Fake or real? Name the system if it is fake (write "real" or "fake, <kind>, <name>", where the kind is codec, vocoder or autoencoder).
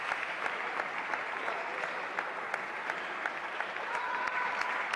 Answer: real